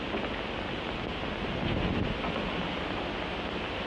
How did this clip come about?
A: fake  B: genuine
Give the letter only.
B